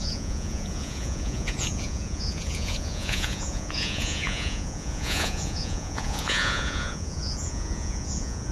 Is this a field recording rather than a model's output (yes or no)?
no